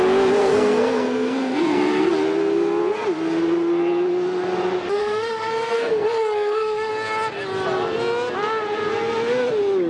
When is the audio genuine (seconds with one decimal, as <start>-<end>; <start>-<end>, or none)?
0.0-0.4; 2.1-5.0; 6.9-9.9